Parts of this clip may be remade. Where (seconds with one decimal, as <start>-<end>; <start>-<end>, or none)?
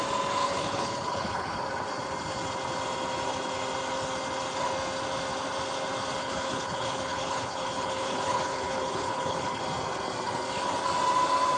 0.4-1.6; 6.2-9.6